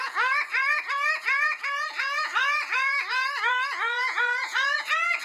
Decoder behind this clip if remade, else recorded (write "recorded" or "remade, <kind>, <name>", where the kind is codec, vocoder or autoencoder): remade, vocoder, Vocos